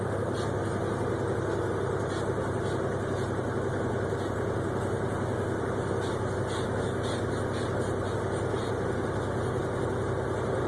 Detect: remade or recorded recorded